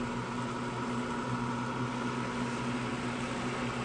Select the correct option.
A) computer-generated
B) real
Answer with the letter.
B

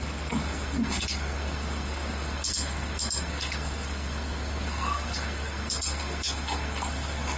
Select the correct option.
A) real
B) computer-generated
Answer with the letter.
B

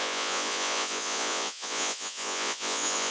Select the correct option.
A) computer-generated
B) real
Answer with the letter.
A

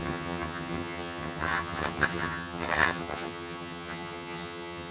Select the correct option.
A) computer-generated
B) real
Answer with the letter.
A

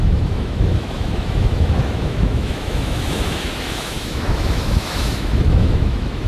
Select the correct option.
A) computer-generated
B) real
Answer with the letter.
A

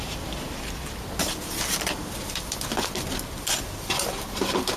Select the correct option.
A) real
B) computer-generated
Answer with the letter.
A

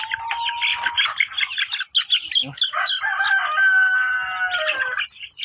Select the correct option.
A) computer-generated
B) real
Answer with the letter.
B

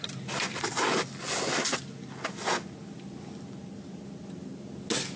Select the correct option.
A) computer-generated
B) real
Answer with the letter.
B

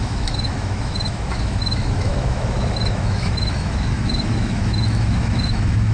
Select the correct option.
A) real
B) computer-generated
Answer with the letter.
B